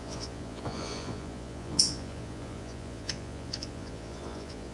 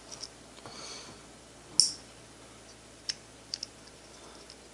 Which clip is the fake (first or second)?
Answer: first